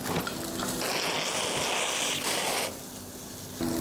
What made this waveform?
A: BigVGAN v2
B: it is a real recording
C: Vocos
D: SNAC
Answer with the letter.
B